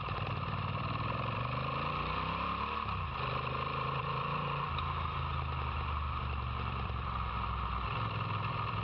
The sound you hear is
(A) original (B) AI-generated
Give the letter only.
B